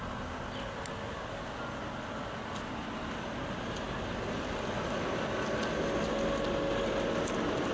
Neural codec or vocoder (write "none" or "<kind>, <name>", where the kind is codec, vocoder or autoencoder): none